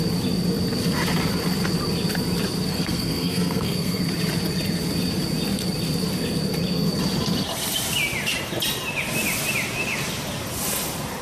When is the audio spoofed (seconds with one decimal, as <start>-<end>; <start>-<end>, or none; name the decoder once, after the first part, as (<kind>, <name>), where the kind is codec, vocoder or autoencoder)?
2.7-4.0 (codec, SNAC)